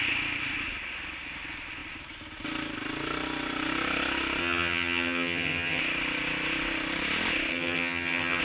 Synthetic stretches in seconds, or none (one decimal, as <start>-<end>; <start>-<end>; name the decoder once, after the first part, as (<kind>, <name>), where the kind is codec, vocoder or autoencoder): 4.4-5.8 (vocoder, HiFi-GAN); 7.5-8.4